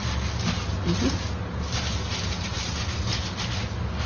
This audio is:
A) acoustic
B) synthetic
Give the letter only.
A